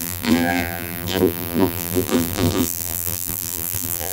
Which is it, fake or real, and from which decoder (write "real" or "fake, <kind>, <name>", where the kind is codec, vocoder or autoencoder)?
fake, vocoder, BigVGAN v2